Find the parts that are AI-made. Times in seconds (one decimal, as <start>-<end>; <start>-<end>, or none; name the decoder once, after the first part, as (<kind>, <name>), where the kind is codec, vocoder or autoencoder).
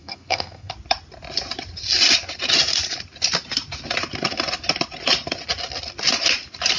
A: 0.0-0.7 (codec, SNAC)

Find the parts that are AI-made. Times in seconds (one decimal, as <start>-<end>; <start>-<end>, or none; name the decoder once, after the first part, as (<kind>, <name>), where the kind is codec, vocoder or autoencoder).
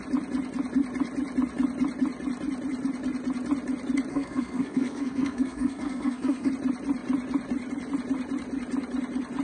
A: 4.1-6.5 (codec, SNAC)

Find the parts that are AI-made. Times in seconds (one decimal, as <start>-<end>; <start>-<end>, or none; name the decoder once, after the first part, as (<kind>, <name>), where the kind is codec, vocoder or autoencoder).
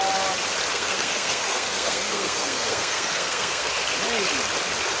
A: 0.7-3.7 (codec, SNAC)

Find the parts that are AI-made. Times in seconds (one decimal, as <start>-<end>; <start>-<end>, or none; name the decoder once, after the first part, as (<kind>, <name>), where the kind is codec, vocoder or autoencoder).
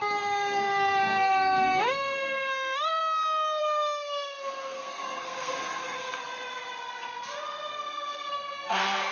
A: 0.0-3.0 (codec, SNAC); 3.6-6.2; 7.7-9.1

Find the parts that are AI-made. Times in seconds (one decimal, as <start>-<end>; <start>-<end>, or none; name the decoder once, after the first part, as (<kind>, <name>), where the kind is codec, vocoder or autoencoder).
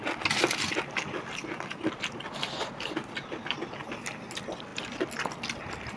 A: none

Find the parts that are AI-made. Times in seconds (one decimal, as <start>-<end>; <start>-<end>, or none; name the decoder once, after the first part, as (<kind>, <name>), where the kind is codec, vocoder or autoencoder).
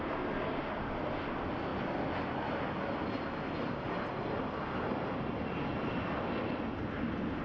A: none